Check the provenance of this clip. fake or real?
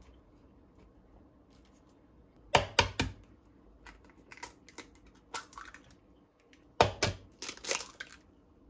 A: real